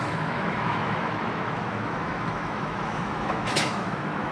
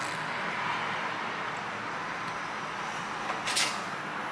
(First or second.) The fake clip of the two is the first